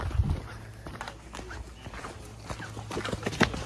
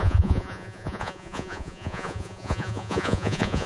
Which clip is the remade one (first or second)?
second